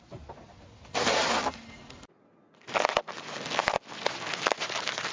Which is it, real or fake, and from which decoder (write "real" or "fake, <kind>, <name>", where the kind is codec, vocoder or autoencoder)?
real